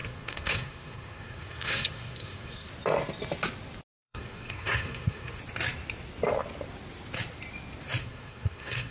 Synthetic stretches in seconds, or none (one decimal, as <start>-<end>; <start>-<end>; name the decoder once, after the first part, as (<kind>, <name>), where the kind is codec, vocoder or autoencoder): 0.0-2.7 (codec, SNAC); 4.0-5.4; 8.0-8.9